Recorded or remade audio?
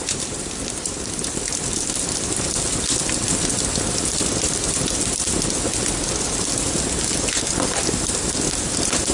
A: recorded